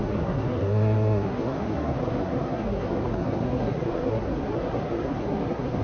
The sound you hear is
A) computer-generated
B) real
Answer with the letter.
A